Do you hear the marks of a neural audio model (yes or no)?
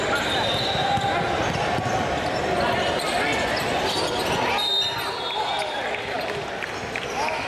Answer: no